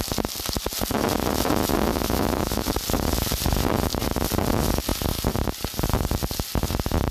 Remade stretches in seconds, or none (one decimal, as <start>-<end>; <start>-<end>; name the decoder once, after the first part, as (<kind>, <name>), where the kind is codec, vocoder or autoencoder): 1.9-2.7 (autoencoder, DAC-VAE)